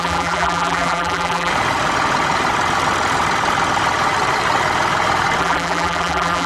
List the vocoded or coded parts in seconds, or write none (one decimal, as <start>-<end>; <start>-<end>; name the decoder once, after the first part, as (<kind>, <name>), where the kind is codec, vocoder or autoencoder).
0.0-1.5 (vocoder, BigVGAN v2); 5.4-6.5